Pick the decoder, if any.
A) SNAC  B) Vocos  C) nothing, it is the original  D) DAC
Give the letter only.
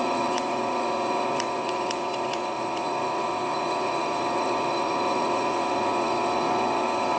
B